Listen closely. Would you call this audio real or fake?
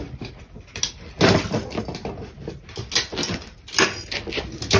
real